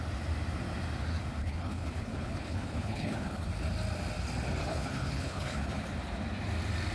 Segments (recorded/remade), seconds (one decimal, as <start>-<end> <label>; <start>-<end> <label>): 0.0-1.4 recorded; 1.4-3.5 remade; 3.5-4.6 recorded; 4.6-5.7 remade; 5.7-6.9 recorded